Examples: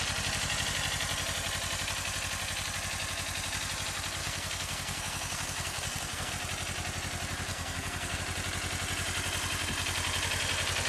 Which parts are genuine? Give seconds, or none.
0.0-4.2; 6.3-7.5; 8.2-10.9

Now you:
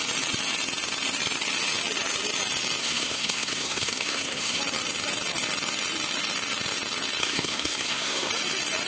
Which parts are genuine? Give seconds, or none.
0.0-2.8; 4.6-7.2; 8.3-8.9

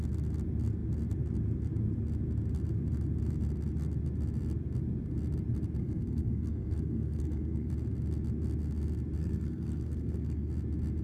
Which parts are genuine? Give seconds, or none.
0.0-5.8; 7.7-9.2; 10.5-11.0

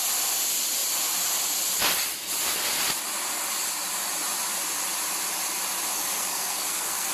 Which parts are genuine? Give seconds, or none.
0.0-5.9

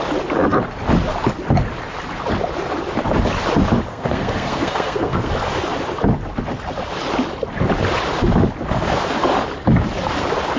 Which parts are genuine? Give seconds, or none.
0.0-3.9; 5.3-10.6